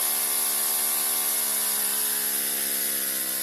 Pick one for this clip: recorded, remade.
recorded